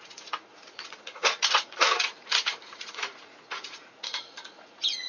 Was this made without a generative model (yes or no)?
no